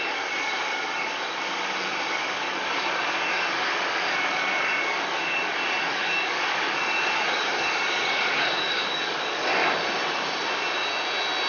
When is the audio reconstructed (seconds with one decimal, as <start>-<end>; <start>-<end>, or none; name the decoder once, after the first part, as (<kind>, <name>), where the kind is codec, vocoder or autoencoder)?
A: 0.0-9.6 (codec, DAC)